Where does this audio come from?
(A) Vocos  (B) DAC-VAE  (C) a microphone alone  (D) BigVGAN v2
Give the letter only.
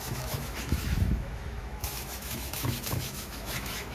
B